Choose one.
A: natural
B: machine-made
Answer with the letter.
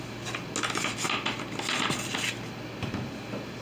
A